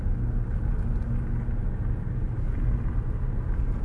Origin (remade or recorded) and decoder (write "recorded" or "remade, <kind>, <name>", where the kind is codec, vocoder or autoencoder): recorded